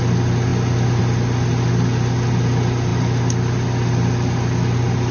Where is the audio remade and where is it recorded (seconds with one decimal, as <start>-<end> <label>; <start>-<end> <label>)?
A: 0.0-5.1 recorded